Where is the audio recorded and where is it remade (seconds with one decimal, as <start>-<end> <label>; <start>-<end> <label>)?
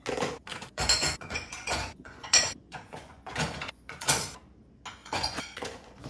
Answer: 0.0-0.5 recorded; 0.5-4.2 remade; 4.2-5.0 recorded; 5.0-6.1 remade